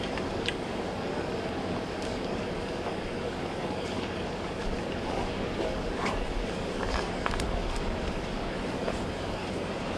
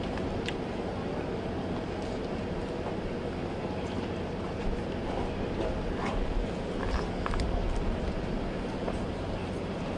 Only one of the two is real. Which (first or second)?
second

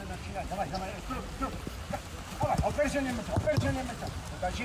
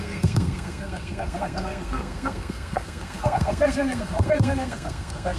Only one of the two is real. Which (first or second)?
first